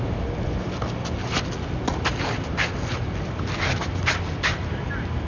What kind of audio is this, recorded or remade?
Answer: recorded